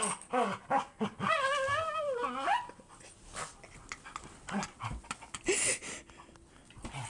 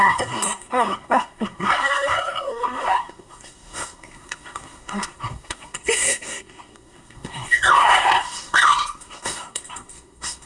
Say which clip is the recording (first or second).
first